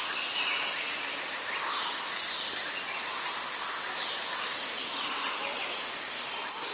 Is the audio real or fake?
real